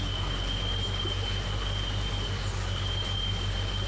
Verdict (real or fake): real